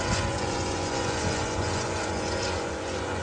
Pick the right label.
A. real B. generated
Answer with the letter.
B